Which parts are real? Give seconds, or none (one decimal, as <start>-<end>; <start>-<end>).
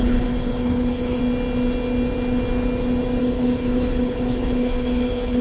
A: 1.2-3.2